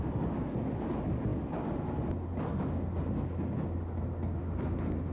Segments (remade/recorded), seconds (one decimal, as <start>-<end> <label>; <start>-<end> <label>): 0.0-5.1 recorded